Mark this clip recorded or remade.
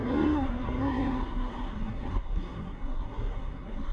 remade